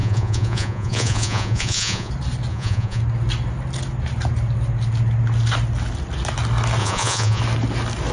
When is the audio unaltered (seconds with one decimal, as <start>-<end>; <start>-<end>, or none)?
2.1-2.5; 3.0-6.8; 7.4-8.1